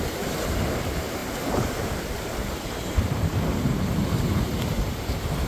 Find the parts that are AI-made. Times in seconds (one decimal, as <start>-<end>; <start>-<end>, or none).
0.0-5.5